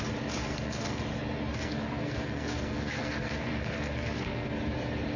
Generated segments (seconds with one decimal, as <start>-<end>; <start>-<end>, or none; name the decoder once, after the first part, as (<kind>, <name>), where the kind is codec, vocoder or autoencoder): 0.4-1.0 (codec, SNAC); 1.5-4.6